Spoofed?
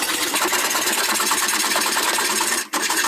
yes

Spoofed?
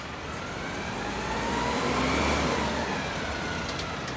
no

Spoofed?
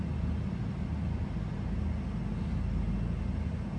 no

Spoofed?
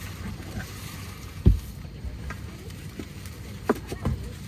yes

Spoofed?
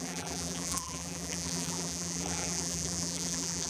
yes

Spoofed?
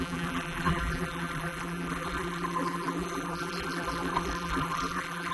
yes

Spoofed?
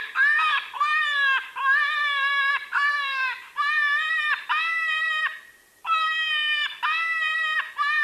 no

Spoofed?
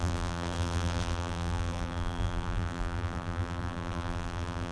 yes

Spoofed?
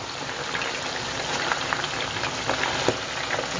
yes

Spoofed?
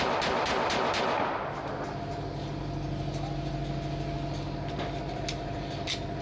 no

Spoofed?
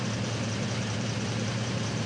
yes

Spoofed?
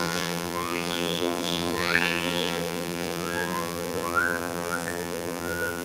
yes